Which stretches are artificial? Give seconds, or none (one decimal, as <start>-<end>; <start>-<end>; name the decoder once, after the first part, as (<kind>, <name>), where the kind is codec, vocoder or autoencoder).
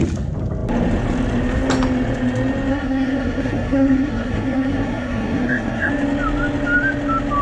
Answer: 2.7-5.9 (codec, SNAC)